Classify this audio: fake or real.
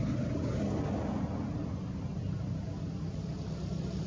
real